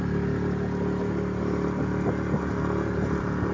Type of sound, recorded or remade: recorded